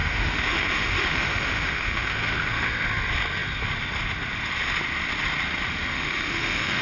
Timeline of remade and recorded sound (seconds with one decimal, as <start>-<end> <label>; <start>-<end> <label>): 0.0-2.6 remade; 2.6-5.9 recorded; 5.9-6.8 remade